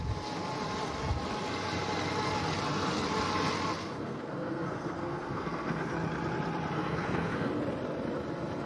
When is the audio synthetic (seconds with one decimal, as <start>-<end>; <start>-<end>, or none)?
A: 3.8-5.9; 6.8-7.5